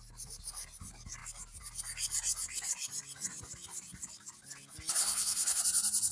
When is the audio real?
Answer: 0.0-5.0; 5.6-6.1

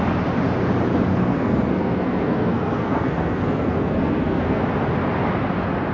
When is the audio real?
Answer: 0.0-1.1; 4.6-5.9

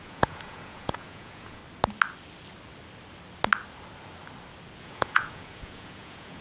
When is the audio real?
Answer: 1.6-4.8

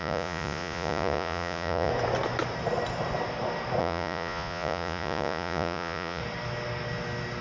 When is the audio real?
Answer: 1.9-3.8; 6.2-7.4

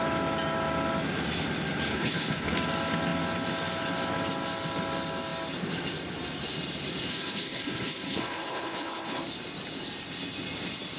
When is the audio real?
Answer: 0.0-1.9; 2.5-7.1; 9.2-11.0

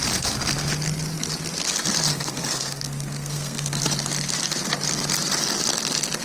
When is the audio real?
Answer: 0.0-2.1; 3.8-6.2

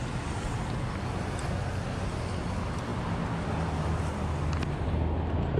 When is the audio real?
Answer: 0.0-5.6